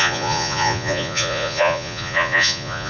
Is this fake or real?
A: fake